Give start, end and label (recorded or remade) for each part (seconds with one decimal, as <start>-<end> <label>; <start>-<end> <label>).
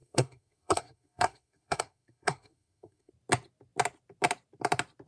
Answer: 0.0-3.1 remade; 3.1-5.1 recorded